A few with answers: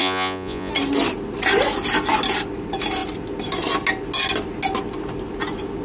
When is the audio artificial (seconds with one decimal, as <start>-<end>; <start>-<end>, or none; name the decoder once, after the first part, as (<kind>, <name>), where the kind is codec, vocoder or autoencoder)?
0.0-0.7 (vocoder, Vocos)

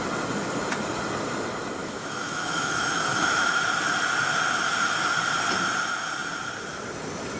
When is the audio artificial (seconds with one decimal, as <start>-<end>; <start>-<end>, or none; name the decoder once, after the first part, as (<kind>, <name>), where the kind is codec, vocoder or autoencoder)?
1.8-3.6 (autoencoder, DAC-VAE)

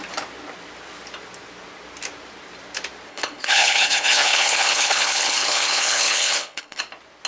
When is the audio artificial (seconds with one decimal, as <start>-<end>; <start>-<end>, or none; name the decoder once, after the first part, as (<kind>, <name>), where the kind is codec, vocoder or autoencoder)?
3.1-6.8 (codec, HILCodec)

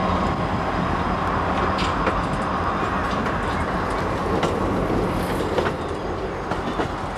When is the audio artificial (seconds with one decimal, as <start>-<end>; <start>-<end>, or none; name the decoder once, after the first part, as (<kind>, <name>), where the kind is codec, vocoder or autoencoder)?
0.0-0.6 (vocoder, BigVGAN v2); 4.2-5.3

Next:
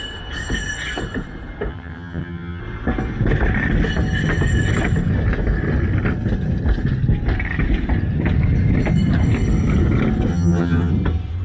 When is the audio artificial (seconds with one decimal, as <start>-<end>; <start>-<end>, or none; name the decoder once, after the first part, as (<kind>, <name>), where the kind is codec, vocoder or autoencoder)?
1.7-2.6 (vocoder, HiFi-GAN); 10.3-10.9